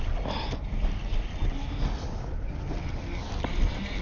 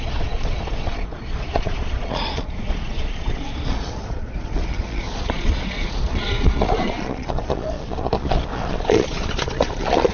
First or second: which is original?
first